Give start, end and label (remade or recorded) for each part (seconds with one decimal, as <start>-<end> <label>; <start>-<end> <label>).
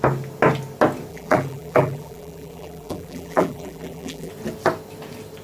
0.0-1.1 recorded; 1.1-4.3 remade; 4.3-5.4 recorded